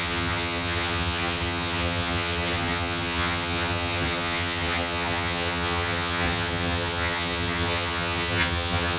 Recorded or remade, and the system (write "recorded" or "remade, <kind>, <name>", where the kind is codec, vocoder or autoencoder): remade, vocoder, HiFi-GAN